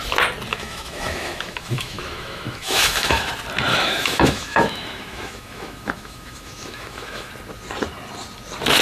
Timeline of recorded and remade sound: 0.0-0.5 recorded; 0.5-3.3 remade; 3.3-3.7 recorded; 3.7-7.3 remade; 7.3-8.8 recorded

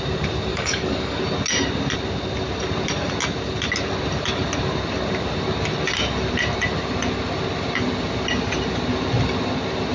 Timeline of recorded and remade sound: 0.0-0.5 recorded; 0.5-1.2 remade; 1.2-9.9 recorded

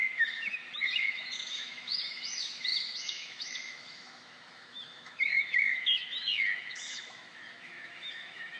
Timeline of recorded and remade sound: 0.0-8.6 remade

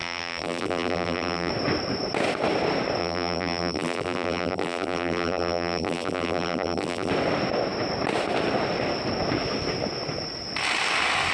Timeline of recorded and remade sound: 0.0-1.5 remade; 1.5-3.0 recorded; 3.0-7.1 remade; 7.1-11.3 recorded

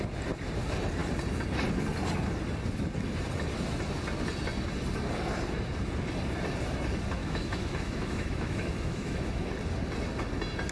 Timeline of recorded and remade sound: 0.0-7.2 recorded; 7.2-9.5 remade; 9.5-10.7 recorded